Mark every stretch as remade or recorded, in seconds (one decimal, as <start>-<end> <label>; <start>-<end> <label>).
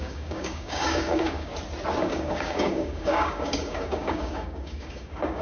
0.0-1.5 remade; 1.5-2.0 recorded; 2.0-5.4 remade